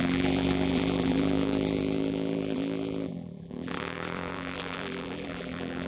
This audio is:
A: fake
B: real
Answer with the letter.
A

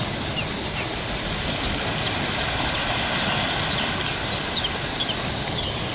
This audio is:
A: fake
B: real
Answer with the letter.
B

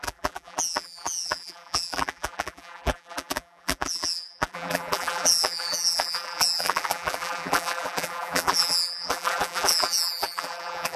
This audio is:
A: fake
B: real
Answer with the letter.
A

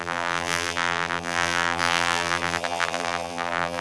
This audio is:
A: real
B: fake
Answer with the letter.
B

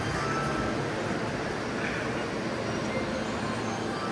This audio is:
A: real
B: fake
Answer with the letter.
A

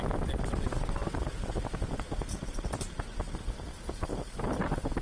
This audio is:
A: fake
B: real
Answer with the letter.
B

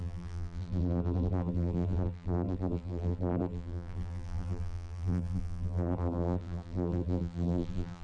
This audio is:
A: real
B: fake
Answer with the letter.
B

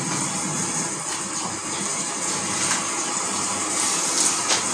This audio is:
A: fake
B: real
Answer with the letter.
B